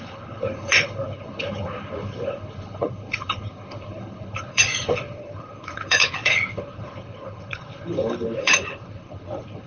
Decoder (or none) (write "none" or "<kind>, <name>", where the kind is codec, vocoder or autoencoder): codec, HILCodec